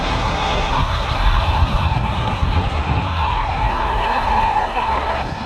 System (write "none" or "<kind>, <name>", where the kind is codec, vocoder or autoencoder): codec, SNAC